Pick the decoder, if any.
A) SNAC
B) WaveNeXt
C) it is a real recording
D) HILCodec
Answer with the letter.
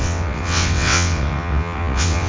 B